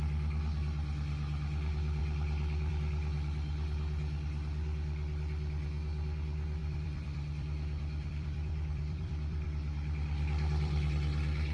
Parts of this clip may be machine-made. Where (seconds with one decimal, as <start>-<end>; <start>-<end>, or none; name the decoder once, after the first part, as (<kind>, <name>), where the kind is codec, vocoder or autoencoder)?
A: 2.0-2.7 (vocoder, BigVGAN v2); 6.6-10.9